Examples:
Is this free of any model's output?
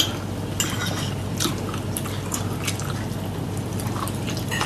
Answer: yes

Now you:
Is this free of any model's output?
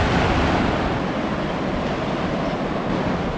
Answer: yes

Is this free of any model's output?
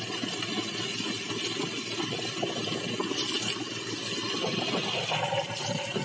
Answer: yes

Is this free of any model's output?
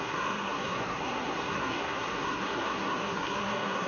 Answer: no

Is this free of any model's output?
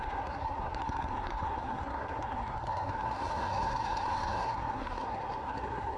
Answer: no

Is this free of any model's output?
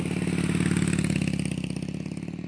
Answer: yes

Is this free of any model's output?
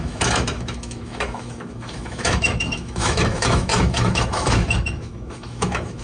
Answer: no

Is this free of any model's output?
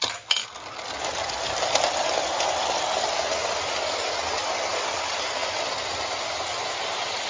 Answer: yes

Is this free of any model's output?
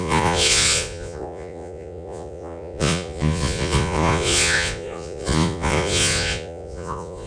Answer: no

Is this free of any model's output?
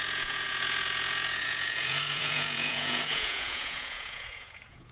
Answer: no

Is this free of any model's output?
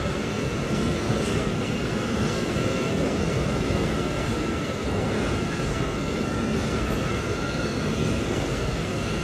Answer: no